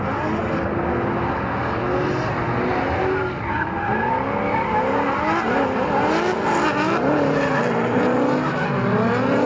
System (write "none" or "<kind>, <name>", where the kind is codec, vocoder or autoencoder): none